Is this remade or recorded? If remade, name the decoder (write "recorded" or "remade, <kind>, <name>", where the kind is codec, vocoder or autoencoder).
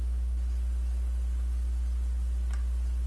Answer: recorded